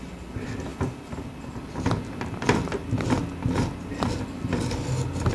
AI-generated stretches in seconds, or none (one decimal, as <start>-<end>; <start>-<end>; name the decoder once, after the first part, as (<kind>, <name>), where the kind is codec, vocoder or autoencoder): none